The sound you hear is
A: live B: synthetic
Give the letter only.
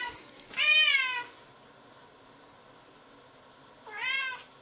A